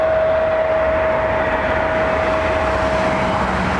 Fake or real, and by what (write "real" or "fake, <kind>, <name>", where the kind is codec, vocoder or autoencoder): real